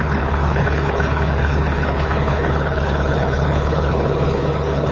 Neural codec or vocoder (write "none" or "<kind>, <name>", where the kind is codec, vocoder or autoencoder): codec, HILCodec